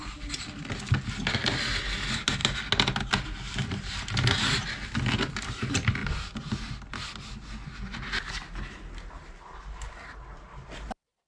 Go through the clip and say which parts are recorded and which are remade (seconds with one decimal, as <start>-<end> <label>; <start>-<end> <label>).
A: 0.0-11.3 recorded